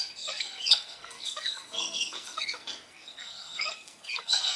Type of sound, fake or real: fake